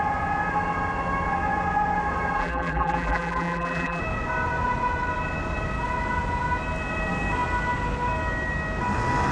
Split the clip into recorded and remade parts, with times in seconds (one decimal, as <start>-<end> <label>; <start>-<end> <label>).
0.0-2.4 recorded; 2.4-4.0 remade; 4.0-9.3 recorded